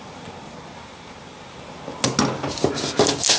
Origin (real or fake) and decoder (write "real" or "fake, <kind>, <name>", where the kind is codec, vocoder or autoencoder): real